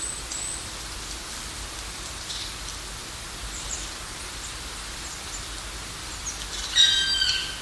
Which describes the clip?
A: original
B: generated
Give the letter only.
A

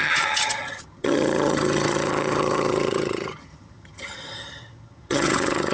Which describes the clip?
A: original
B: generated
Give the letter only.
B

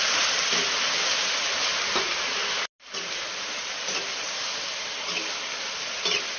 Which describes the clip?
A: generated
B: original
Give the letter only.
B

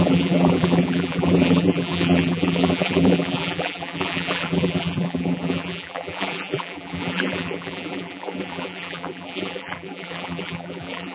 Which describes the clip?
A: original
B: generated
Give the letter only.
B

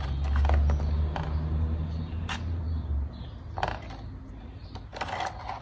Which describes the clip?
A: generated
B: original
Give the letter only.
B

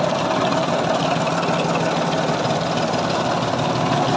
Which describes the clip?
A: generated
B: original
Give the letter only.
B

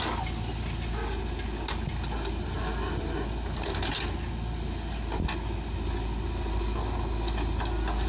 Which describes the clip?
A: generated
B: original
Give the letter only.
B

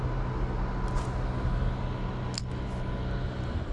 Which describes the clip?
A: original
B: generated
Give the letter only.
A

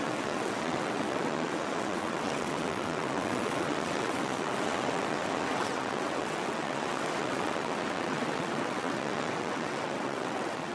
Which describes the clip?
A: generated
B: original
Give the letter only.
A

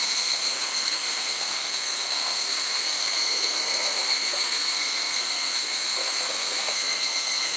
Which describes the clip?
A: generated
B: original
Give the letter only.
A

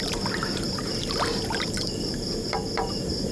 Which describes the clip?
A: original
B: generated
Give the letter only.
A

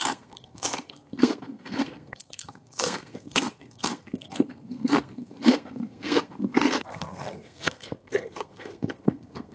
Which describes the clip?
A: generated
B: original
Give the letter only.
A